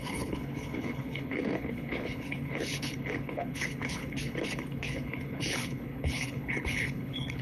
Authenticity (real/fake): fake